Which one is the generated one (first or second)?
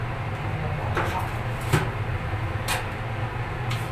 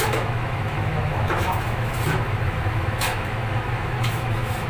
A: second